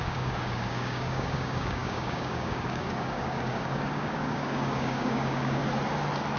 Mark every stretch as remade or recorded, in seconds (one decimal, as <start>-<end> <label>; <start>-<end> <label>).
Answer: 0.0-5.6 remade; 5.6-6.4 recorded